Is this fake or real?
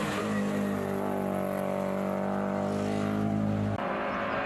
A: real